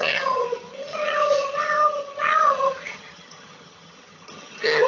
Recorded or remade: remade